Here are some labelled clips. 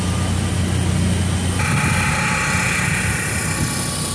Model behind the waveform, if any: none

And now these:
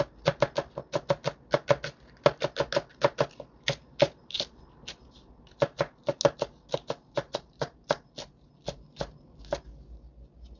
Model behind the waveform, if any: none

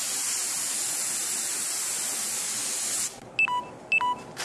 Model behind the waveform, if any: none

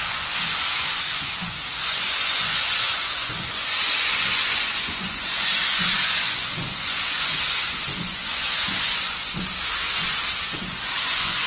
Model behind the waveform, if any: vocoder, Vocos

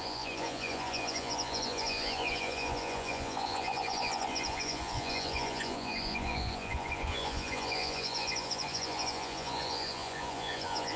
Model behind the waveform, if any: vocoder, Vocos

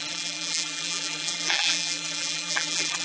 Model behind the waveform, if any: vocoder, BigVGAN v2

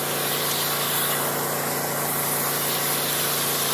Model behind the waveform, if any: none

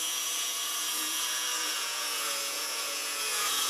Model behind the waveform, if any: vocoder, Vocos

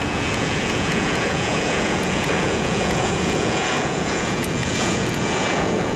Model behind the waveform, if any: vocoder, Vocos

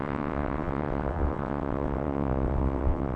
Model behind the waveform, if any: vocoder, WaveNeXt